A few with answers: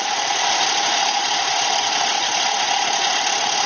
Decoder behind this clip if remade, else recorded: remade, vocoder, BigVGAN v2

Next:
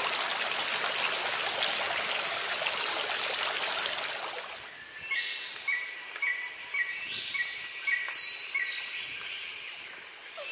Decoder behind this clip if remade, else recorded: recorded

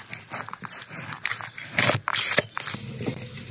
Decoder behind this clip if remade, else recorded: remade, vocoder, BigVGAN v2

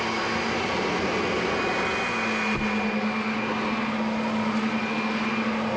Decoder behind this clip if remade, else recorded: recorded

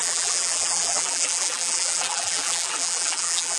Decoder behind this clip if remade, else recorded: remade, vocoder, BigVGAN v2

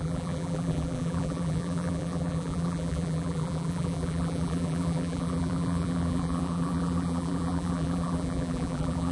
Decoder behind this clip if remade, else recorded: remade, vocoder, BigVGAN v2